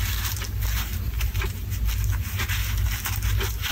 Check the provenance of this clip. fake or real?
real